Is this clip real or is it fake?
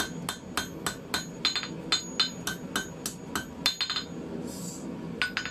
real